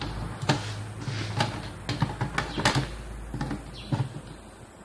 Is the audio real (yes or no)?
yes